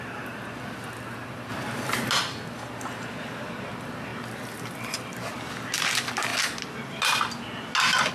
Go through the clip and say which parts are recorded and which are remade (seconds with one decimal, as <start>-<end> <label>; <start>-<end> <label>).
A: 0.0-1.5 recorded; 1.5-2.1 remade; 2.1-8.1 recorded